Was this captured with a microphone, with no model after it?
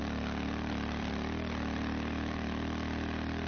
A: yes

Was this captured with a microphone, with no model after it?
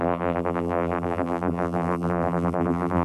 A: no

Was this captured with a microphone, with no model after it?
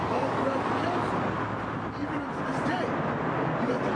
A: yes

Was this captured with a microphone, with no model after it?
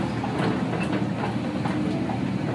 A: yes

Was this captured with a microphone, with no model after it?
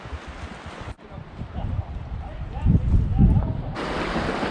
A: yes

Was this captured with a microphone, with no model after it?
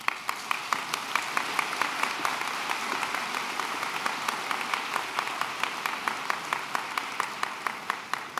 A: no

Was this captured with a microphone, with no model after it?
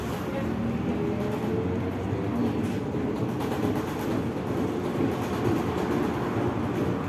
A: yes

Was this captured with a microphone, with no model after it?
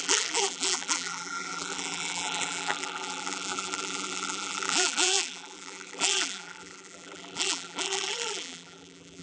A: no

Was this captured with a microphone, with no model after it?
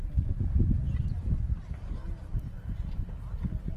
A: yes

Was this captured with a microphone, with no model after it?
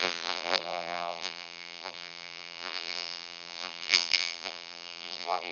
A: no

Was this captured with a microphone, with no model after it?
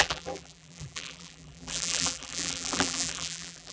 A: no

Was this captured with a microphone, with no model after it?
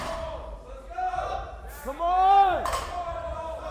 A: no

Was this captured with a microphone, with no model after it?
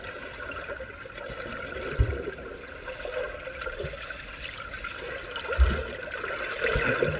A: yes